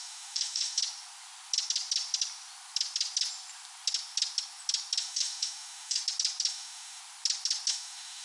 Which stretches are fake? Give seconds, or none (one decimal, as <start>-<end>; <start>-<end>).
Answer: 0.0-0.8; 5.0-6.0; 6.5-7.0; 7.7-8.2